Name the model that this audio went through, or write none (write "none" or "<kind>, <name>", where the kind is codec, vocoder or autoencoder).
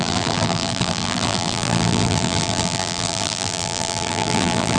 vocoder, BigVGAN v2